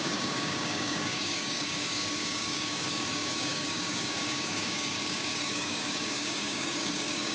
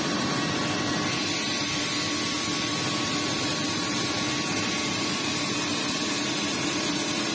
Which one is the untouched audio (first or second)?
second